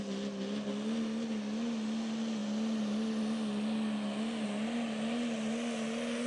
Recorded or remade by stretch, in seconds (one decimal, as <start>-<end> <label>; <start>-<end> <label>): 0.0-6.3 recorded

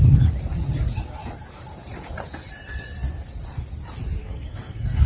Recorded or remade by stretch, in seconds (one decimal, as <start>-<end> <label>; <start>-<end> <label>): 0.0-4.2 recorded; 4.2-5.1 remade

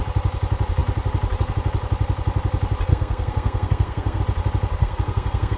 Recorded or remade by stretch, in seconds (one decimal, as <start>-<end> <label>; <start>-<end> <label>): 0.0-2.9 recorded; 2.9-4.2 remade; 4.2-4.8 recorded; 4.8-5.6 remade